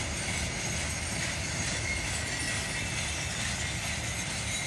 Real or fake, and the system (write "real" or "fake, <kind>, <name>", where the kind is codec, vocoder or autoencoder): real